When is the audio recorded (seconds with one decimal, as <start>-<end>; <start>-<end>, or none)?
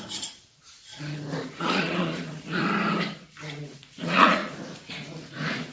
0.9-1.5; 2.6-3.6; 4.4-4.9